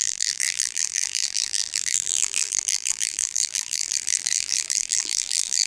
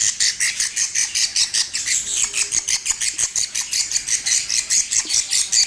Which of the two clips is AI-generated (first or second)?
first